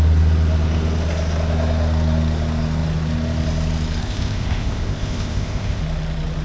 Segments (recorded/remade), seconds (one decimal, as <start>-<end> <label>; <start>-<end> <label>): 0.0-4.0 recorded; 4.0-5.8 remade; 5.8-6.4 recorded